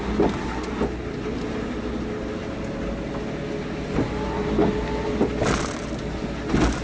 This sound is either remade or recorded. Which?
recorded